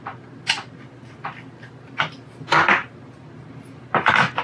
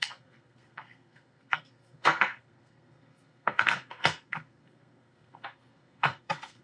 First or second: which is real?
first